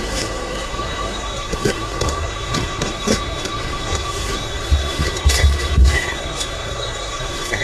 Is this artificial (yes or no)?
yes